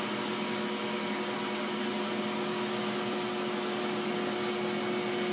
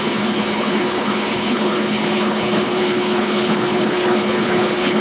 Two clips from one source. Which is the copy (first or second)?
second